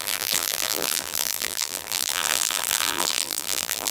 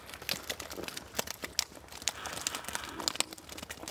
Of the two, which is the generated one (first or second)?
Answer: first